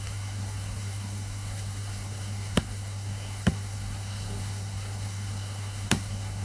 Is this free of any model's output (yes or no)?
no